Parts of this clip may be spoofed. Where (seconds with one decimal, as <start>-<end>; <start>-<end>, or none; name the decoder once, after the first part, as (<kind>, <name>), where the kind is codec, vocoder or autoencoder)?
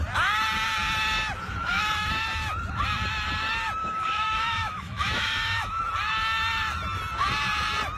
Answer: 1.6-2.1 (autoencoder, DAC-VAE); 3.8-5.8